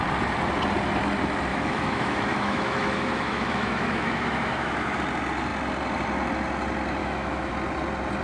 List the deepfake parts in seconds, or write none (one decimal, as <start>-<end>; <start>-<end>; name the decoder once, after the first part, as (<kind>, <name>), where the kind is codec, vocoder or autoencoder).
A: 1.5-5.0 (autoencoder, DAC-VAE); 7.0-7.5

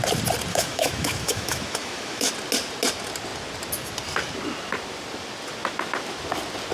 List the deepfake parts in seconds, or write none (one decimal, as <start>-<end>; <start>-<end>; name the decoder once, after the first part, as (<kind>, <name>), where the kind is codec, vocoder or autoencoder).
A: 0.5-2.3 (autoencoder, DAC-VAE)

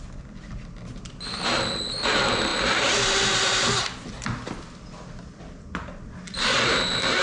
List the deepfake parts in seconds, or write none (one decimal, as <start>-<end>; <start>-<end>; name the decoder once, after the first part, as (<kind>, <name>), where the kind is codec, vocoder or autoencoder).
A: none

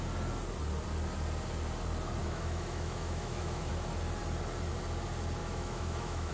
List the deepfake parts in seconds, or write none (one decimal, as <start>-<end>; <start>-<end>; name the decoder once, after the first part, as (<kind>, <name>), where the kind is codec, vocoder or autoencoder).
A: 2.2-3.7 (autoencoder, DAC-VAE); 5.4-6.3

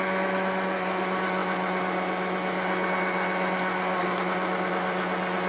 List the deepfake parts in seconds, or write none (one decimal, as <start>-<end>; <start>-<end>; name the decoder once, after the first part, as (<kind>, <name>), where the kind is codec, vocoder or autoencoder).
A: none

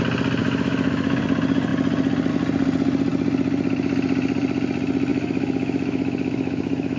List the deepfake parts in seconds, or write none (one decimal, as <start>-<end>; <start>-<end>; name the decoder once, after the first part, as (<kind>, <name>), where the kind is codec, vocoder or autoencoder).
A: 0.4-1.2 (autoencoder, DAC-VAE); 5.1-7.0

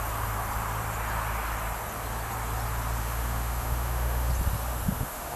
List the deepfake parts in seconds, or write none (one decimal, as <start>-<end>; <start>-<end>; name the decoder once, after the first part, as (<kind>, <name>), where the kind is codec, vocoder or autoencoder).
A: 3.0-4.3 (autoencoder, DAC-VAE); 4.9-5.4